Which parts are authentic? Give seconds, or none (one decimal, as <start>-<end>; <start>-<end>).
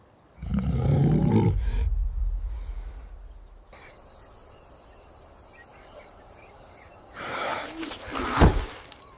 0.0-0.5; 1.3-5.7; 7.4-9.2